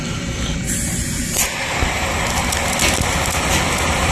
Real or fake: real